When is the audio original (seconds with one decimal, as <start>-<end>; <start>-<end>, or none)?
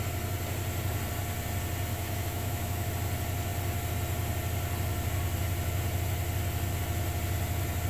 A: 0.0-1.9; 2.9-7.9